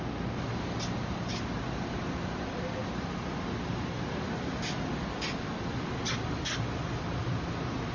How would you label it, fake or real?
real